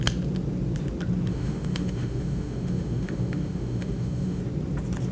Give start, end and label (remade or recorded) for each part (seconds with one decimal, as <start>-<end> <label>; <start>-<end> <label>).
0.0-1.3 recorded; 1.3-4.4 remade; 4.4-5.1 recorded

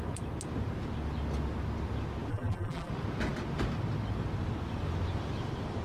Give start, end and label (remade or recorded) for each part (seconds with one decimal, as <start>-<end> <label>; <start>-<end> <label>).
0.0-2.3 recorded; 2.3-2.9 remade; 2.9-5.8 recorded